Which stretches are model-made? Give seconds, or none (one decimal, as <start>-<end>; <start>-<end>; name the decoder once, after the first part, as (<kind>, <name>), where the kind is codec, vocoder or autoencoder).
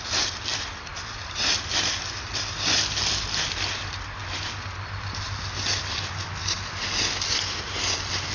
none